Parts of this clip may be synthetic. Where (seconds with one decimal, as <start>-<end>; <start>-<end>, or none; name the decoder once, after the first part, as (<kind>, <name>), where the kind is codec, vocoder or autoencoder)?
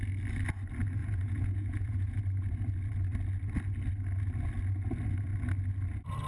1.0-2.2 (vocoder, Vocos)